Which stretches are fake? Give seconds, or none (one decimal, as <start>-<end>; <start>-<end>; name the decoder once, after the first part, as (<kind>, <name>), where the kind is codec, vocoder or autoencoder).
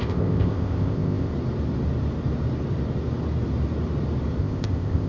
0.0-1.3 (codec, ZipCodec); 4.4-5.1